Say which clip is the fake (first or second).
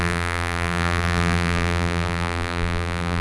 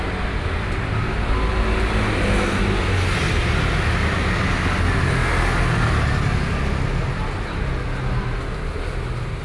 first